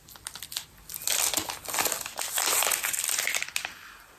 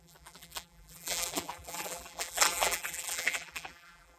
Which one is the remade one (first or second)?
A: second